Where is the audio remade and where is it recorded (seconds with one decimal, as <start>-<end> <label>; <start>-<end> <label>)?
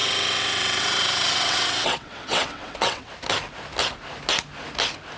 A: 0.0-3.1 remade; 3.1-5.2 recorded